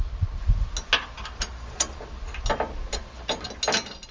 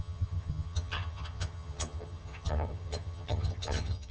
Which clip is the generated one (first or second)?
second